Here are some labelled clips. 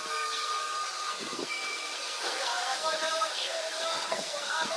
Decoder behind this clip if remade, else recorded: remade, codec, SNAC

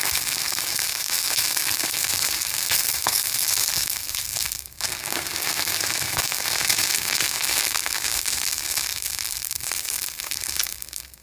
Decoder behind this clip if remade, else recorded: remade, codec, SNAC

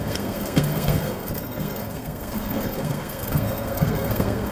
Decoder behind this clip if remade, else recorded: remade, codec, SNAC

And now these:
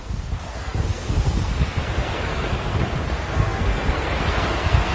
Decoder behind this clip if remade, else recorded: remade, codec, SNAC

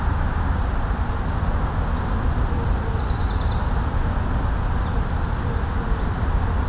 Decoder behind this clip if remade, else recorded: recorded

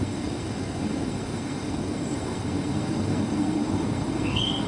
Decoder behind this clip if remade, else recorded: remade, codec, SNAC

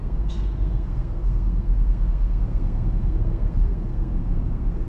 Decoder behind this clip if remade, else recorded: remade, codec, SNAC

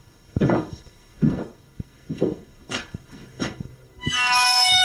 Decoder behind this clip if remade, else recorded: remade, codec, SNAC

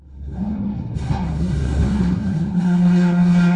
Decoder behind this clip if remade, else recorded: remade, codec, SNAC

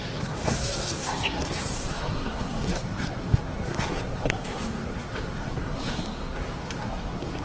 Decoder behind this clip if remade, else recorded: remade, codec, SNAC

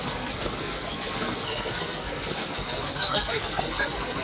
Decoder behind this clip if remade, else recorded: remade, codec, SNAC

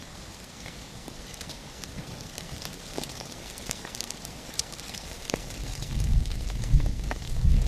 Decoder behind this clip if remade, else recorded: remade, codec, SNAC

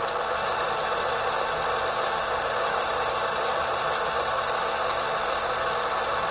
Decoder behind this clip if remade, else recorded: recorded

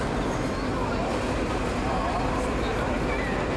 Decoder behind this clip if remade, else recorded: recorded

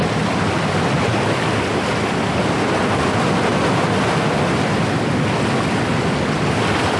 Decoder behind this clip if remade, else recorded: recorded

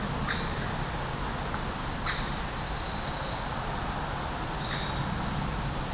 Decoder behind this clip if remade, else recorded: recorded